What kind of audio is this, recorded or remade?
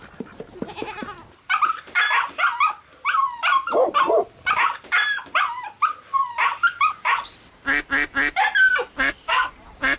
recorded